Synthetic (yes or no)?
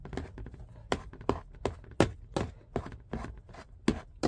no